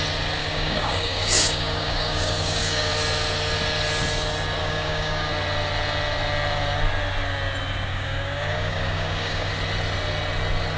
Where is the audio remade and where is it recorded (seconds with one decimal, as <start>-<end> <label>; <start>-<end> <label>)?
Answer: 0.0-0.4 recorded; 0.4-2.9 remade; 2.9-4.6 recorded; 4.6-5.3 remade; 5.3-7.9 recorded; 7.9-9.5 remade; 9.5-10.8 recorded